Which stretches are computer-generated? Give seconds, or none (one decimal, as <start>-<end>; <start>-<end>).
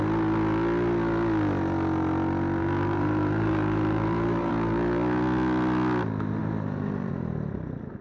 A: 2.6-4.5; 6.4-7.1